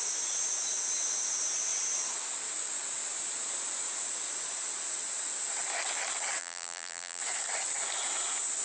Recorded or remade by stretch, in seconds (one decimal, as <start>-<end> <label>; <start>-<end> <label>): 0.0-6.4 recorded; 6.4-7.2 remade; 7.2-8.6 recorded